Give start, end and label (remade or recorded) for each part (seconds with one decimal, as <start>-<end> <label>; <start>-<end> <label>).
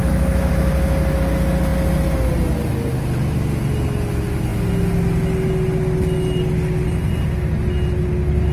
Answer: 0.0-0.5 remade; 0.5-8.5 recorded